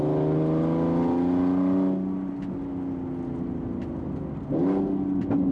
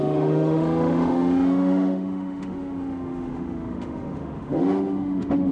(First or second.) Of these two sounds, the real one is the first